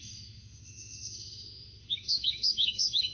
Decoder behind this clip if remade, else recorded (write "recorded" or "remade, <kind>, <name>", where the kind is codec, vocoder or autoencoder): remade, autoencoder, DAC-VAE